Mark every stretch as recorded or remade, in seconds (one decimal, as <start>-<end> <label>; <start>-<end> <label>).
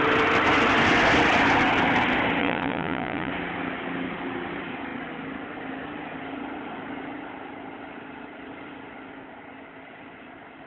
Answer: 0.0-2.4 recorded; 2.4-3.3 remade; 3.3-10.7 recorded